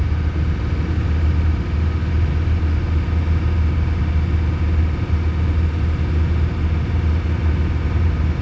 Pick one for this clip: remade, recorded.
recorded